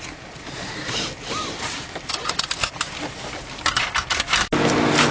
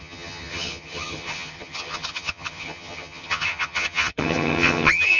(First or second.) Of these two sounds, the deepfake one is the second